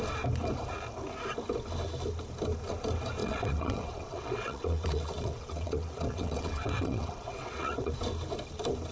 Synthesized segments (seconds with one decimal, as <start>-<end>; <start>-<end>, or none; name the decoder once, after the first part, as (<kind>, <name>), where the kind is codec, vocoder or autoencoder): 3.2-7.9 (vocoder, WaveNeXt)